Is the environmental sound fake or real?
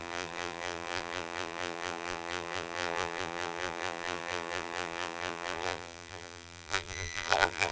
fake